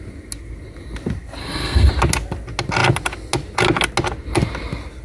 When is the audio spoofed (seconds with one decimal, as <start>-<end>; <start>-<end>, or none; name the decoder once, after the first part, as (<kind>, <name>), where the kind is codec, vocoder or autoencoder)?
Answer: 1.4-1.9 (codec, SNAC)